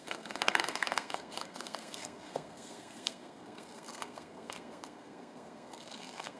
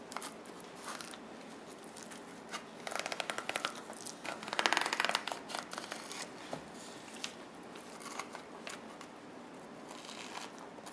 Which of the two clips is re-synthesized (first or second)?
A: first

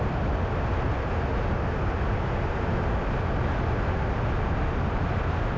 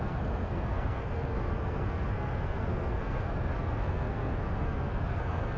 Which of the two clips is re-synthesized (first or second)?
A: second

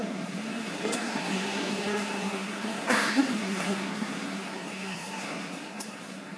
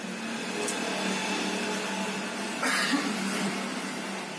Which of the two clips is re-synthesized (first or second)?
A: first